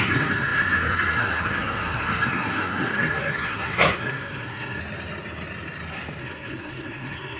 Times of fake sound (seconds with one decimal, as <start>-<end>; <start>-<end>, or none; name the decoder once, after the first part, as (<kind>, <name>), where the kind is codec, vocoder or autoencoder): 0.0-4.8 (codec, SNAC); 6.2-7.4